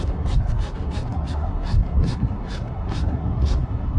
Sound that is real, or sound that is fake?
fake